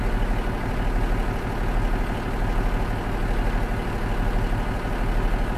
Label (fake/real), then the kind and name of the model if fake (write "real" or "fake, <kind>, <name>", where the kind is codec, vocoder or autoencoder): real